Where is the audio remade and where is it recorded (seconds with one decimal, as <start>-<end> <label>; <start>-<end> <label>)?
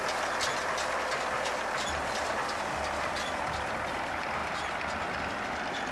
0.0-5.9 recorded